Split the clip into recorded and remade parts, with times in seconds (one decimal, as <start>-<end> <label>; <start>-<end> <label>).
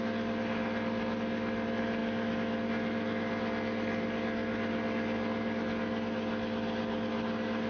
0.0-7.7 recorded